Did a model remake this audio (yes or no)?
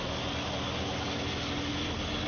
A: no